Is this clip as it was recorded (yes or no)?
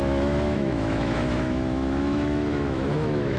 no